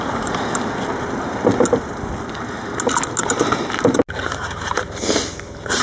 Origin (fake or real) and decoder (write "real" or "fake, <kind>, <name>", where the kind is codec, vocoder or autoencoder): real